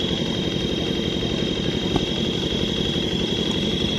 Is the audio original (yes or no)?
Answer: yes